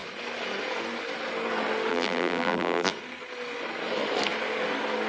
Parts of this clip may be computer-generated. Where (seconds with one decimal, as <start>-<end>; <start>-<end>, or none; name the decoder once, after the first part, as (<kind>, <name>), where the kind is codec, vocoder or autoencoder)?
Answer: 1.9-2.9 (vocoder, BigVGAN v2)

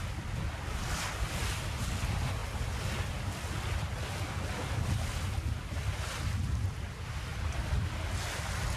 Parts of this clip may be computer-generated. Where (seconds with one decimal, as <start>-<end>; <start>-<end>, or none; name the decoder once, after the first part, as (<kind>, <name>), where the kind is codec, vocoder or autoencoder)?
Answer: 7.3-7.9 (vocoder, BigVGAN v2)